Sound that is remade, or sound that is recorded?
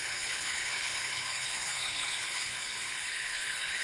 remade